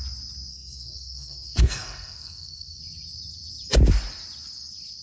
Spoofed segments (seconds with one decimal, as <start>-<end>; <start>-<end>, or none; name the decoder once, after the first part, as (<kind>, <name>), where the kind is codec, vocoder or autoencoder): 0.5-2.8 (codec, SNAC)